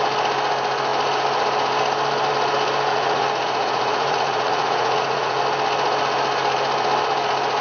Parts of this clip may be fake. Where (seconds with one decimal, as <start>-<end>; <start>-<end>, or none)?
2.9-5.4